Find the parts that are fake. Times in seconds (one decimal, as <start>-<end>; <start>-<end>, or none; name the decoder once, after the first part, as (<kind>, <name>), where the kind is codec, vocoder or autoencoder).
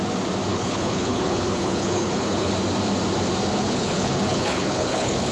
0.5-2.5 (codec, HILCodec); 3.5-5.3